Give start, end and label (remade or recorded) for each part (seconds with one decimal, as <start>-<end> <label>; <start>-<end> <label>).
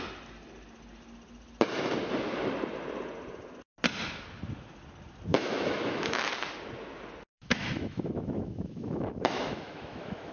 0.0-5.3 recorded; 5.3-6.3 remade; 6.3-7.3 recorded; 7.3-10.3 remade